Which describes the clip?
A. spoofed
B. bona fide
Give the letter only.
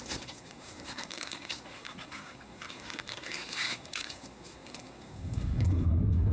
A